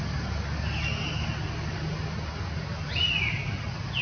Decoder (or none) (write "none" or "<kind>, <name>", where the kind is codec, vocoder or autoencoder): none